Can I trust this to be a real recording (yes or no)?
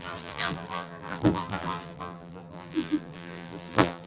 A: no